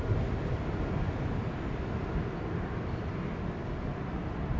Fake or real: real